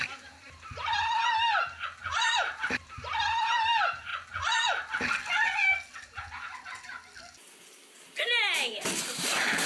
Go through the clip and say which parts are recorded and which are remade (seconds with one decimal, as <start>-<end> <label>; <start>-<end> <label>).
0.0-1.2 remade; 1.2-2.1 recorded; 2.1-4.1 remade; 4.1-7.9 recorded; 7.9-9.7 remade